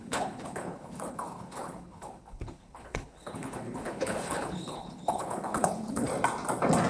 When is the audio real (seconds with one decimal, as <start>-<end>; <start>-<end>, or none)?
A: 6.1-6.9